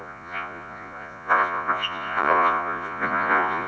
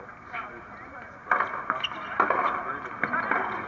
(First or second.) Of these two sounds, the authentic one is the second